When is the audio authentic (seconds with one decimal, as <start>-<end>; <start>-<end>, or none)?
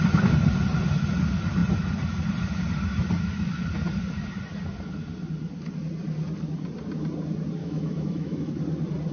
0.0-7.6; 8.5-9.1